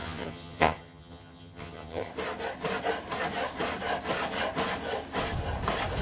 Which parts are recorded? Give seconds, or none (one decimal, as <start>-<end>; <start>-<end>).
2.1-6.0